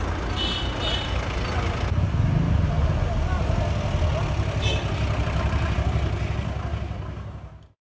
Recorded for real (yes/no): yes